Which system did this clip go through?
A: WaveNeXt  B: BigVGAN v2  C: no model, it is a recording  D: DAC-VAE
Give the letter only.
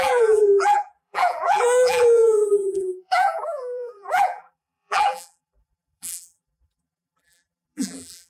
B